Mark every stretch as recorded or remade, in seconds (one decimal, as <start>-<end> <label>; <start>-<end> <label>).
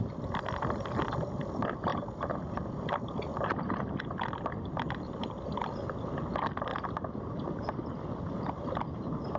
0.0-1.9 remade; 1.9-3.0 recorded; 3.0-9.4 remade